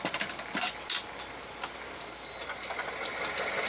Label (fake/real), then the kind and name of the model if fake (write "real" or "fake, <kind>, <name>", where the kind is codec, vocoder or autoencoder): real